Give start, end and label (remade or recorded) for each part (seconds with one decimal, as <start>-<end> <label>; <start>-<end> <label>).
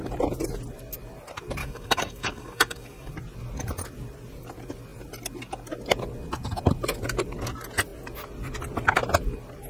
0.0-1.6 recorded; 1.6-3.1 remade; 3.1-9.7 recorded